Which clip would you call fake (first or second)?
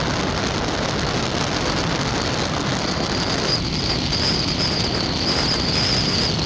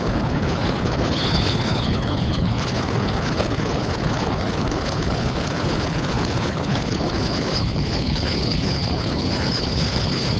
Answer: second